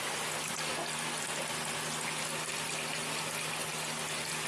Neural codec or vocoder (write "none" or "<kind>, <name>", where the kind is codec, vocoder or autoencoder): none